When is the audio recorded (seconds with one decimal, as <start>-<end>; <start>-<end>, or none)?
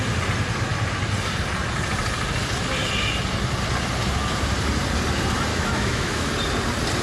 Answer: 0.0-5.5; 6.3-7.0